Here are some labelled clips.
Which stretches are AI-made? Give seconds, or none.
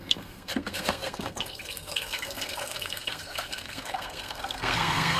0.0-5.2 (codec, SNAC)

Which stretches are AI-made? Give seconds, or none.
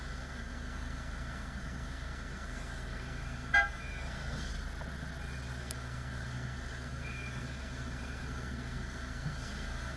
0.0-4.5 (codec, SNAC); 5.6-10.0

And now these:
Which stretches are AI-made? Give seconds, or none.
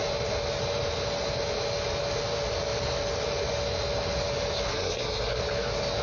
4.7-5.4 (codec, SNAC)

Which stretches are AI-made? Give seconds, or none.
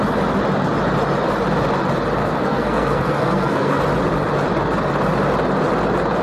2.2-3.8 (codec, SNAC)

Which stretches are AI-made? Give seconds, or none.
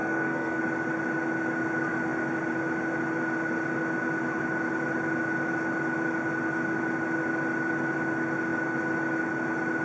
0.0-0.6 (codec, SNAC)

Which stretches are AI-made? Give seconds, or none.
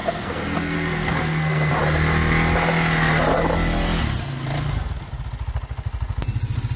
0.0-1.7 (codec, SNAC)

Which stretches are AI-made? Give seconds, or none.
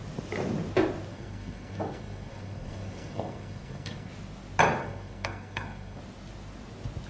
1.1-4.1 (codec, SNAC); 4.8-6.0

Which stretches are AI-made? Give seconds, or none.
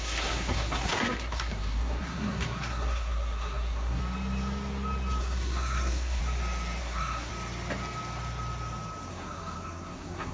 0.0-4.0 (codec, SNAC); 5.2-6.2; 6.8-7.3; 9.1-10.3